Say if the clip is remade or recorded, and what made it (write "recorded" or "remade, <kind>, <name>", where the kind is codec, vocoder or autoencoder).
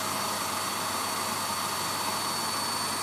recorded